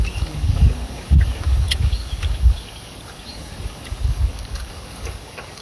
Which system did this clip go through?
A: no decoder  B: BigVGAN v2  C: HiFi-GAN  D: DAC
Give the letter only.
D